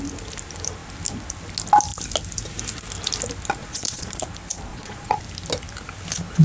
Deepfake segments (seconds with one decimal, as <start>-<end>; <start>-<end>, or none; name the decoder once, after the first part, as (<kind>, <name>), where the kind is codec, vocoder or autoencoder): 3.6-4.2 (vocoder, Vocos); 4.7-5.2